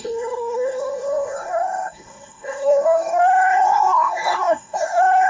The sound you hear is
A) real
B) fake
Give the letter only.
B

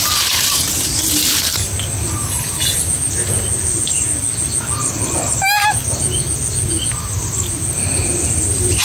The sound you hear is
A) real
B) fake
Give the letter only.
A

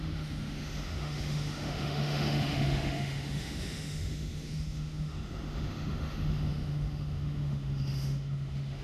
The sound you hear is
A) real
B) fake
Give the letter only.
B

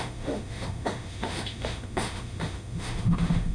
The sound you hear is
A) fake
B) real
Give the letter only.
A